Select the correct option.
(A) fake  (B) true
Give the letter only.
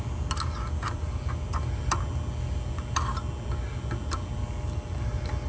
B